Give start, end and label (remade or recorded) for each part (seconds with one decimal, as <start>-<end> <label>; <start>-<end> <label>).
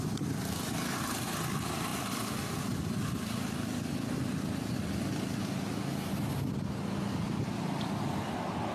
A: 0.0-8.7 recorded